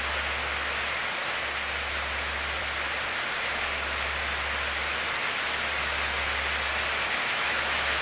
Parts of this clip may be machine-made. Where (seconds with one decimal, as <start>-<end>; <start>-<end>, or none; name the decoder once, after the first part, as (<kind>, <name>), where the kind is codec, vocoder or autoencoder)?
7.2-8.0 (autoencoder, DAC-VAE)